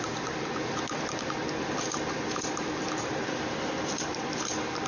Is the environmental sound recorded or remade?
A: recorded